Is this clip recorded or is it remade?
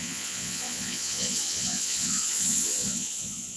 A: remade